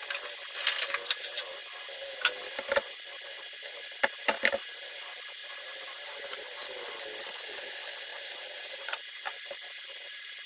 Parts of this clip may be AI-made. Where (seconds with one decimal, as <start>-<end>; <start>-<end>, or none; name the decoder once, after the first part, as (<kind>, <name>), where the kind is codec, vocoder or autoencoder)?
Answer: 5.4-6.8 (vocoder, BigVGAN v2); 8.1-9.8